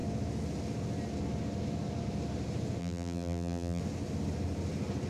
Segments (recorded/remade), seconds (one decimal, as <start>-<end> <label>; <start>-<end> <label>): 0.0-2.8 recorded; 2.8-3.8 remade; 3.8-5.1 recorded